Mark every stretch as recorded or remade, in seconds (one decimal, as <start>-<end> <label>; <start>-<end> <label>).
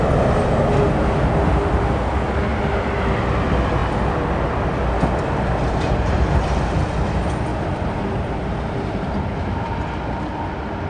0.0-2.5 recorded; 2.5-3.2 remade; 3.2-7.5 recorded; 7.5-9.7 remade; 9.7-10.9 recorded